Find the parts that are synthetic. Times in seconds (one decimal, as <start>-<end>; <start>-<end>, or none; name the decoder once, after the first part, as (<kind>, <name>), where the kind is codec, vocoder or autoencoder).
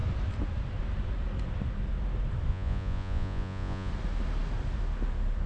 2.5-3.9 (vocoder, Vocos)